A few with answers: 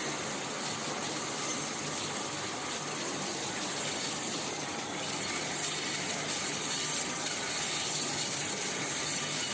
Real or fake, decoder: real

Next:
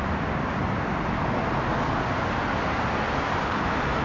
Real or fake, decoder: real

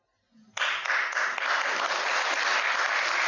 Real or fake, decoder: real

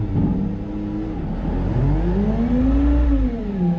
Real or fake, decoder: real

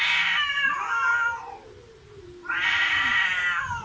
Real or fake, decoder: real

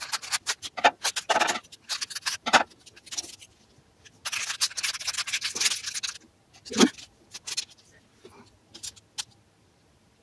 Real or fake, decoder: real